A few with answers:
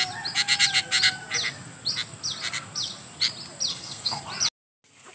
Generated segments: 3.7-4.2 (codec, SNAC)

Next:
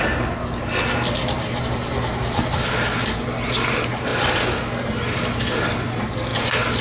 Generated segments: none

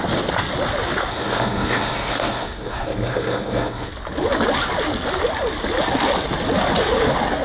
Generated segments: 1.1-3.9 (codec, SNAC)

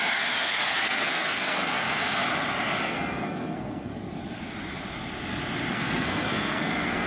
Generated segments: 0.0-2.2 (codec, SNAC); 2.8-3.9; 5.7-7.1

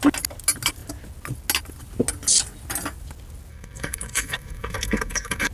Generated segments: 3.5-5.5 (codec, SNAC)

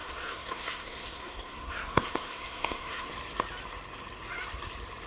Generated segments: 0.0-3.1 (codec, SNAC)

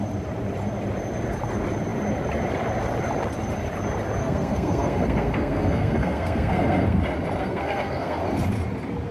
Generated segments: 4.2-7.0 (codec, SNAC); 7.4-8.2